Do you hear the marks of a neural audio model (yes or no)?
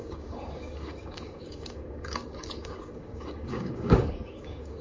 yes